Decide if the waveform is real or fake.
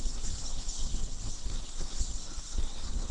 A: fake